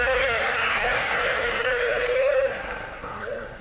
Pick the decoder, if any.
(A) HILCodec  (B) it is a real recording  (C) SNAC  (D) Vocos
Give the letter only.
C